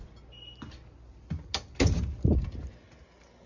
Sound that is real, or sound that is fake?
real